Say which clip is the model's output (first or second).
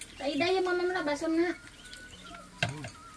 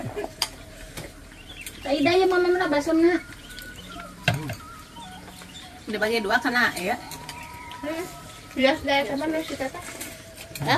second